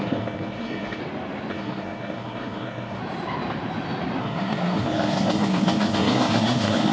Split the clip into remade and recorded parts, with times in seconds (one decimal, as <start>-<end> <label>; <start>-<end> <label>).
0.0-1.0 remade; 1.0-1.5 recorded; 1.5-3.0 remade; 3.0-4.2 recorded; 4.2-6.9 remade